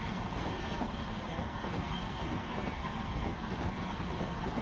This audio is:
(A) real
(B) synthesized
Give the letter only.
B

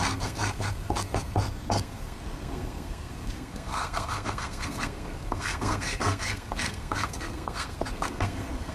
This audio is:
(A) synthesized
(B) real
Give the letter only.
A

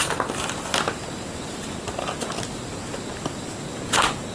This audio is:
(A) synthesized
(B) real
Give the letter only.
B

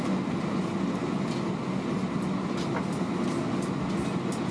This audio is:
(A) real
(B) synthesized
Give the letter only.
A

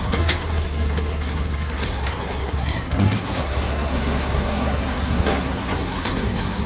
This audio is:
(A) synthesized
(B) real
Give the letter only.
A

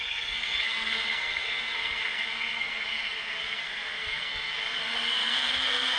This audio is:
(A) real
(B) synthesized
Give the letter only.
B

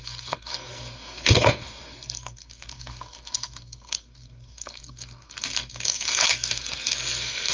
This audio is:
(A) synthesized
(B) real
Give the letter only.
A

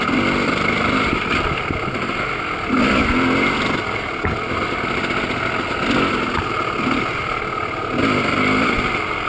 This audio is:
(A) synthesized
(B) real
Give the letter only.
B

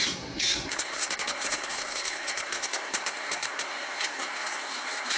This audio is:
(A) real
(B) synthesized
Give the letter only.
B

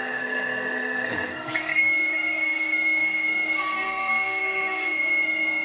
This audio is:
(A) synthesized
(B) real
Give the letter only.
A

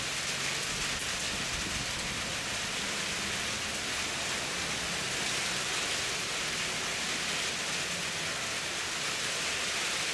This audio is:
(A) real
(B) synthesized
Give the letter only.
A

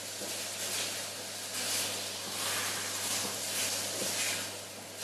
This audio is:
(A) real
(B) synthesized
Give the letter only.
A